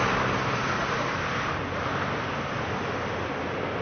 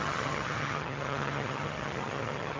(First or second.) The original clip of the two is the first